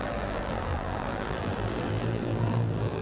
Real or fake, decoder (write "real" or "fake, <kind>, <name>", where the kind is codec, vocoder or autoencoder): fake, vocoder, BigVGAN v2